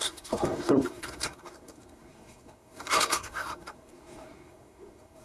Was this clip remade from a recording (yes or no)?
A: yes